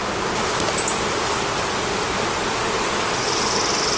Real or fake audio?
real